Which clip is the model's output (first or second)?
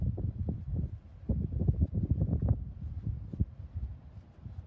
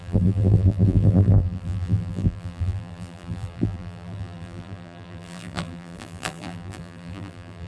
second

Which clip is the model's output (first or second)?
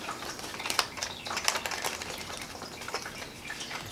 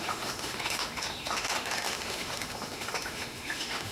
second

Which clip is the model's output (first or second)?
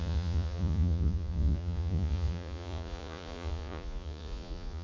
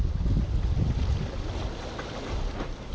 first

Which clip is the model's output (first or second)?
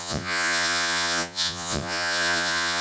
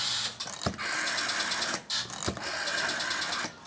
first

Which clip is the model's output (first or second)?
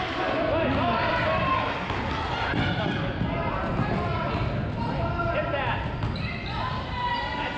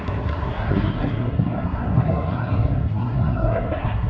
second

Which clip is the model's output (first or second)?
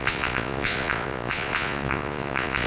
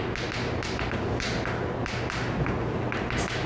first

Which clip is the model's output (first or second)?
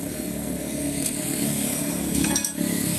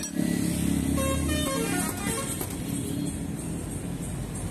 first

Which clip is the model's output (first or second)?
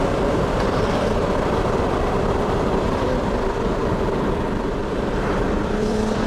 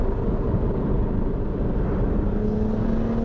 first